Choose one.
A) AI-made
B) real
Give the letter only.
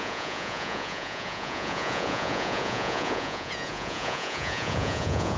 A